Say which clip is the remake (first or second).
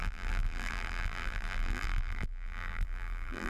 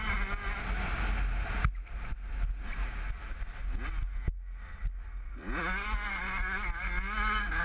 first